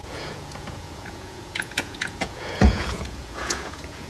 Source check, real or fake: fake